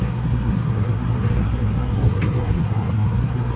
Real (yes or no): no